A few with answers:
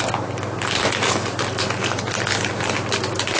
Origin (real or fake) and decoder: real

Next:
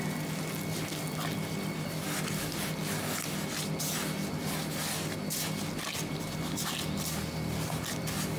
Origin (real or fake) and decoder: real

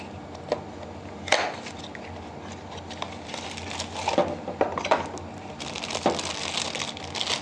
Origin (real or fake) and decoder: real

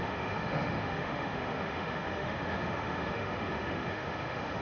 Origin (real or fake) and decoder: fake, autoencoder, DAC-VAE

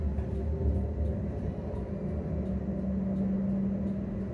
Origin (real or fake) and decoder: real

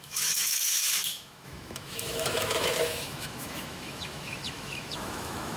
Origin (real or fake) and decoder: fake, autoencoder, DAC-VAE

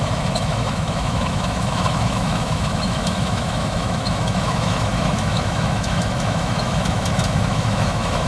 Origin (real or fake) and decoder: fake, autoencoder, DAC-VAE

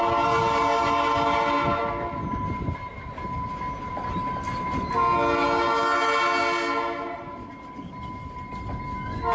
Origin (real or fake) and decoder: real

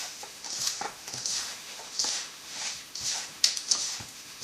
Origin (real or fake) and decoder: fake, autoencoder, DAC-VAE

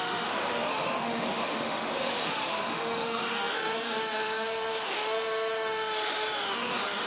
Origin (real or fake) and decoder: fake, autoencoder, DAC-VAE